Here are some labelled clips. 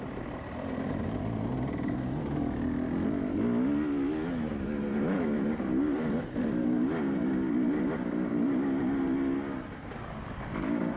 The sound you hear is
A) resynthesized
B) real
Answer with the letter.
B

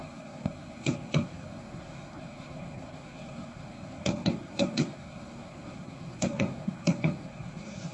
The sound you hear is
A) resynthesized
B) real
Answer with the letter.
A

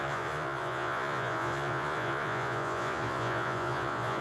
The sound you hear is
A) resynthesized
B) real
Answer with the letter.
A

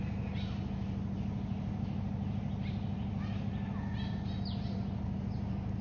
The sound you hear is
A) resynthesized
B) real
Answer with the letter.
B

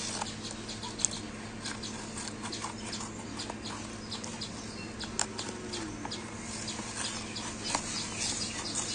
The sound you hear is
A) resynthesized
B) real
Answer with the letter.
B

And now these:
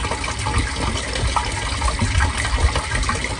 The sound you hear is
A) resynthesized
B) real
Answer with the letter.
B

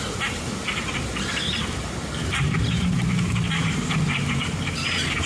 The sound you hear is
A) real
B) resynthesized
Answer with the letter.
B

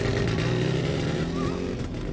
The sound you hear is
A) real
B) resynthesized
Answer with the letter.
A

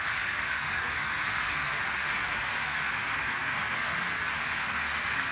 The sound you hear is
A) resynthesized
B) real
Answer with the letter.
A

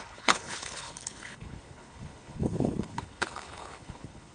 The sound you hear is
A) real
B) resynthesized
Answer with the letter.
B